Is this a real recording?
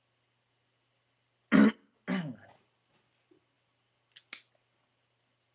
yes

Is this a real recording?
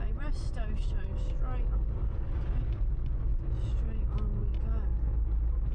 yes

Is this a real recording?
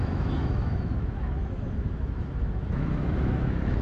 no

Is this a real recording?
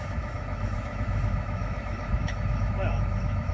no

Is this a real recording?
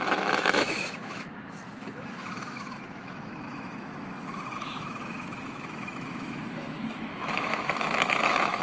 no